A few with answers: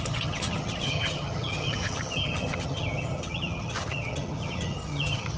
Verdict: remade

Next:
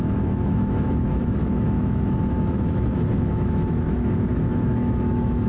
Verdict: remade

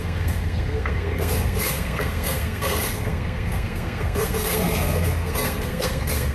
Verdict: remade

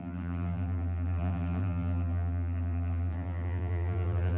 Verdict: remade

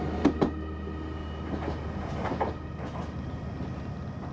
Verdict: recorded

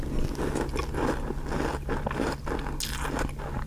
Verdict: recorded